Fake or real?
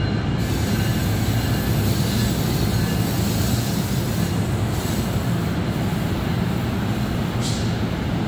real